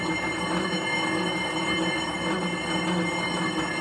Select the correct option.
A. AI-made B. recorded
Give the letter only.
B